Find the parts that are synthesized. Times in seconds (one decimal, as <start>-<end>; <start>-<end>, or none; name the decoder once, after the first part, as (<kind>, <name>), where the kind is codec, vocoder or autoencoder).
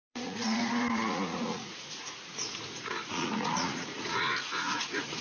0.0-5.2 (vocoder, Vocos)